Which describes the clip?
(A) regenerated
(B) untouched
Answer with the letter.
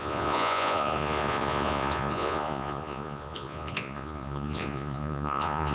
A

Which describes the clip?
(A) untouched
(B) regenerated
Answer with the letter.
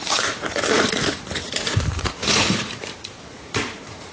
B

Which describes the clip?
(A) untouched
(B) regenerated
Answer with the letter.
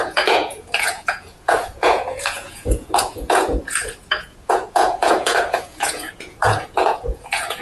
B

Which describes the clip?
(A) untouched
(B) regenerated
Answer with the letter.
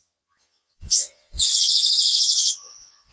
B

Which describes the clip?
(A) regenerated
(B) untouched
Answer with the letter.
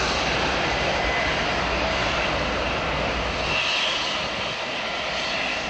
B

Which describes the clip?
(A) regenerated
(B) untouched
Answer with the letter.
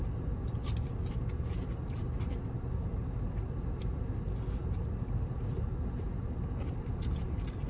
B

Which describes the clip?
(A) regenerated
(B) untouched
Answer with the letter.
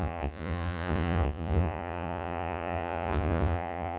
A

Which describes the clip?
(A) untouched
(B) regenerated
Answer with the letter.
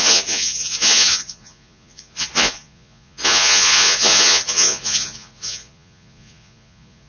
B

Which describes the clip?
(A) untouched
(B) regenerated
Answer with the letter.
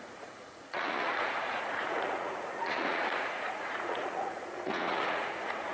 B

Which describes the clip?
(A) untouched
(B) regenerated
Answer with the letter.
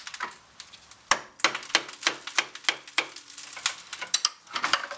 A